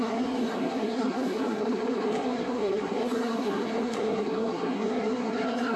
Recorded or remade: remade